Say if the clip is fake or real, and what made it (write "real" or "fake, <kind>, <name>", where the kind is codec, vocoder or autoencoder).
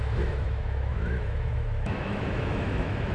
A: fake, autoencoder, DAC-VAE